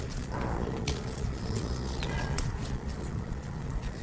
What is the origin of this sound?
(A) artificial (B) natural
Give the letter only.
A